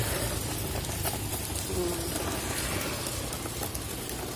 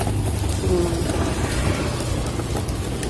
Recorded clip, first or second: second